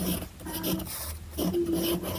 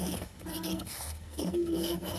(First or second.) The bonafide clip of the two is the first